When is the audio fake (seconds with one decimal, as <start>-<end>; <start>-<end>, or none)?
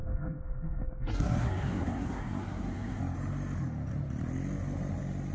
0.0-3.0